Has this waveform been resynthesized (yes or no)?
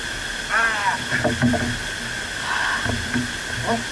no